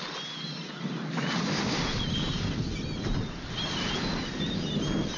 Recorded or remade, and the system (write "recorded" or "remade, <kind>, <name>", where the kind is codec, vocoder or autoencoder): recorded